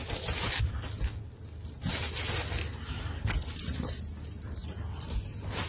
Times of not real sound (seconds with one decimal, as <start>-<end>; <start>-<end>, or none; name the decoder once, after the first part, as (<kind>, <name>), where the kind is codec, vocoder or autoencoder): none